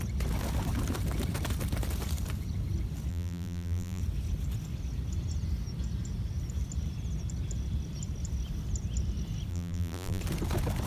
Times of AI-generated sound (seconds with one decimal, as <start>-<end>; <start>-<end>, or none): 3.1-4.0; 9.5-10.2